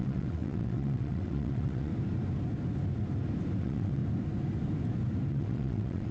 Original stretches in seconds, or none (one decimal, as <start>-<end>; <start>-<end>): 1.9-3.6; 4.0-5.3